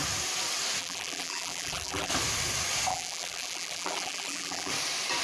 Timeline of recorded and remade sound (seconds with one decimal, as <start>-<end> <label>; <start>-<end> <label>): 0.0-0.8 recorded; 0.8-2.1 remade; 2.1-2.9 recorded; 2.9-4.7 remade; 4.7-5.2 recorded